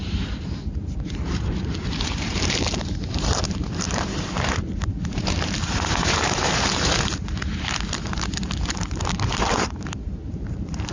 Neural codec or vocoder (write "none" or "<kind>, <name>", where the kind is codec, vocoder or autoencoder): vocoder, BigVGAN v2